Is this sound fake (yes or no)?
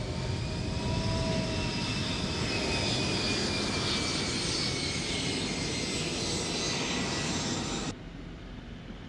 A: no